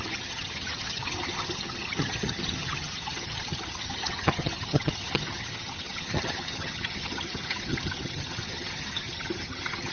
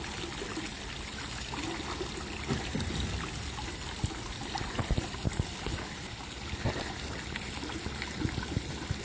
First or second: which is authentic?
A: second